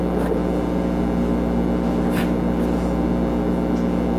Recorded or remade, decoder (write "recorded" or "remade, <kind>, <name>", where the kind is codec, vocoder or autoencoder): recorded